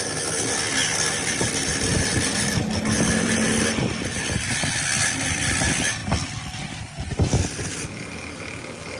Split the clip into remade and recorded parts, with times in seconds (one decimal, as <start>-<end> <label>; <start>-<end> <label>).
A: 0.0-9.0 recorded